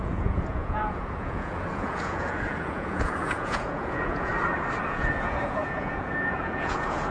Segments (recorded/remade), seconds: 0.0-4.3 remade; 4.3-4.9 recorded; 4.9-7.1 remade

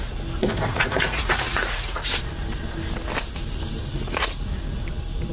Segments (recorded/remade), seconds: 0.0-0.4 recorded; 0.4-2.1 remade; 2.1-3.8 recorded; 3.8-4.3 remade; 4.3-5.3 recorded